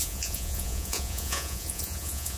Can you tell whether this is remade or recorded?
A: remade